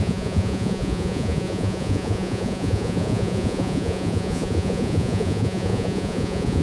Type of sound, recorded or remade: remade